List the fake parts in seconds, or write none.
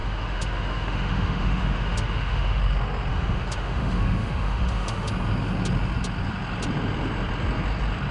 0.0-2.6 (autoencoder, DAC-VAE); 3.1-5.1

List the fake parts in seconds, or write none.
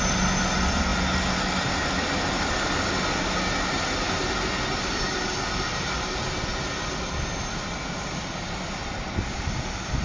none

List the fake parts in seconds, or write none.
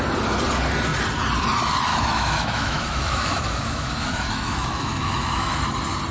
1.9-5.6 (autoencoder, DAC-VAE)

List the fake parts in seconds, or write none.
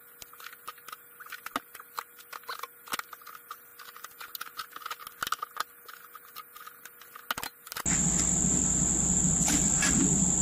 none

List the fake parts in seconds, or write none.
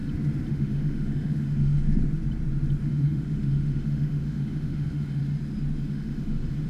0.5-2.0 (autoencoder, DAC-VAE); 2.8-5.2; 5.9-6.7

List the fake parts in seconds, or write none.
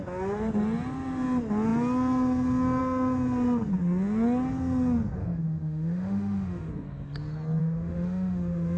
5.2-6.7 (autoencoder, DAC-VAE); 7.6-8.8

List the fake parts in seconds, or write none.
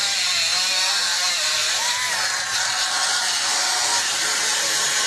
none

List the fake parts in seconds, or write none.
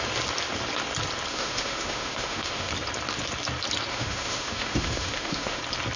1.3-2.7 (autoencoder, DAC-VAE); 3.9-5.6